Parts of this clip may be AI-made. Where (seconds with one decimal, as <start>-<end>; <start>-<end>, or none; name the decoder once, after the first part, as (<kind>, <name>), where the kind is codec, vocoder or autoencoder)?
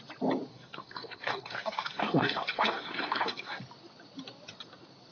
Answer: 0.5-3.6 (codec, SNAC)